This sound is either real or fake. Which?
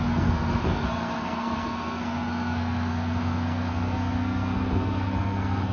fake